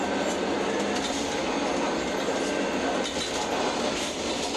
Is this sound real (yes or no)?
yes